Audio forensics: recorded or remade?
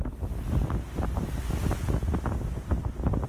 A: recorded